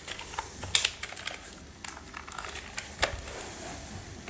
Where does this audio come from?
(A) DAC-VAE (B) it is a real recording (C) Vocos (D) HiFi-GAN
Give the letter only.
B